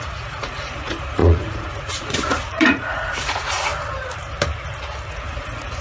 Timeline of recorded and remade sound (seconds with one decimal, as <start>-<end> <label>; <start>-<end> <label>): 0.0-3.7 remade; 3.7-5.1 recorded; 5.1-5.8 remade